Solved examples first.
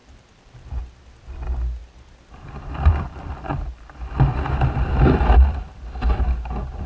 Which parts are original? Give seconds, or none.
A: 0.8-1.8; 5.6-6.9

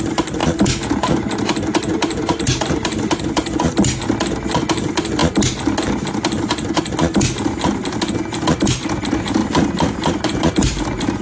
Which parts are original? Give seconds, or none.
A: 0.0-11.2

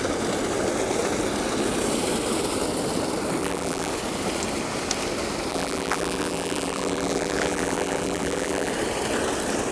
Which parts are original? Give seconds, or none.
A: 0.0-3.4; 3.9-5.5; 8.7-9.7

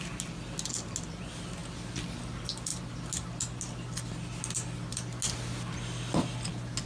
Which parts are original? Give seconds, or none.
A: 0.0-6.9

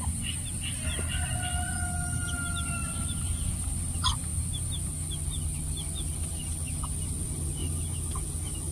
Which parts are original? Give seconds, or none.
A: 0.0-8.7